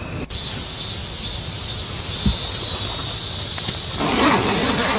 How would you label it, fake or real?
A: real